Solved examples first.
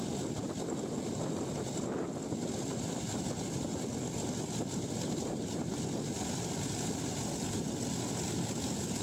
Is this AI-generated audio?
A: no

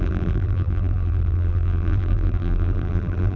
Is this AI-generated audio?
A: yes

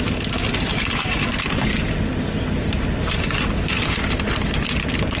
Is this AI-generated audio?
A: no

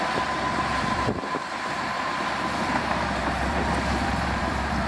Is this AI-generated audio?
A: yes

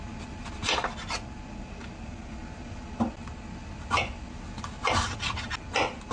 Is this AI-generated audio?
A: no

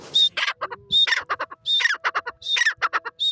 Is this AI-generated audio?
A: no